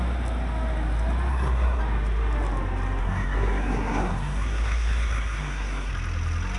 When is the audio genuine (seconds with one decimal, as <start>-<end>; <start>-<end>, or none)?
0.0-1.3; 1.8-3.0; 5.9-6.6